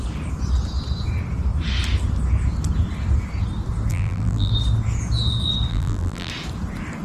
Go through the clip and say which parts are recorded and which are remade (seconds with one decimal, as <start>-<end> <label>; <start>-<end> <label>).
0.0-3.9 recorded; 3.9-4.5 remade; 4.5-5.7 recorded; 5.7-6.3 remade; 6.3-7.0 recorded